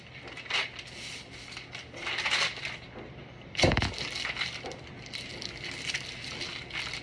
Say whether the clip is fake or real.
real